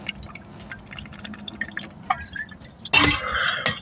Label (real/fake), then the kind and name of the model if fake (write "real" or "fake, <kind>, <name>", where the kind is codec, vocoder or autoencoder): real